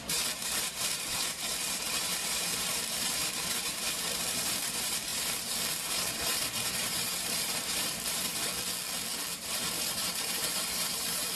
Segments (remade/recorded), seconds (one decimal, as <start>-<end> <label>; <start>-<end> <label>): 0.0-8.5 remade; 8.5-9.3 recorded; 9.3-11.4 remade